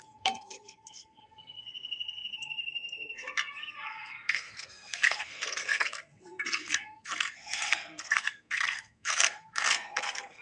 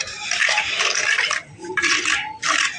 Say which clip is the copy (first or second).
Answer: first